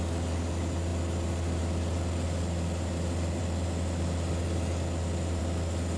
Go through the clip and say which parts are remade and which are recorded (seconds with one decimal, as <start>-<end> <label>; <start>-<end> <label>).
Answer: 0.0-6.0 recorded